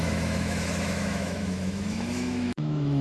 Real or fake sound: fake